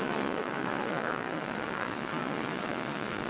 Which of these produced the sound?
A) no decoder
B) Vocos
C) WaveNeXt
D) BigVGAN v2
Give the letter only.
B